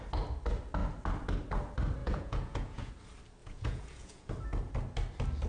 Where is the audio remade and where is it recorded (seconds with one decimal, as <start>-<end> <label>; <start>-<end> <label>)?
0.0-2.0 recorded; 2.0-2.9 remade; 2.9-3.4 recorded; 3.4-4.3 remade; 4.3-5.5 recorded